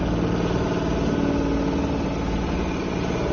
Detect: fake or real real